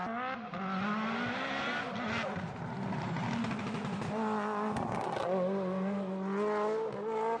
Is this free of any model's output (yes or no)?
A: yes